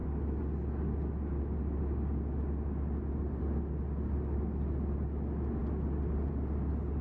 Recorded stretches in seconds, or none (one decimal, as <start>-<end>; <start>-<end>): 0.0-7.0